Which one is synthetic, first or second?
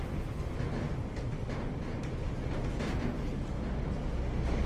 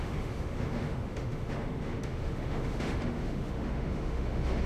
second